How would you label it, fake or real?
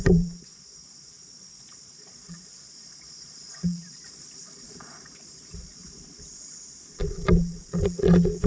fake